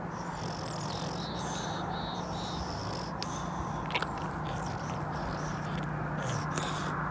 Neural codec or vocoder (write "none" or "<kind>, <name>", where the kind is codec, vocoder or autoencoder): none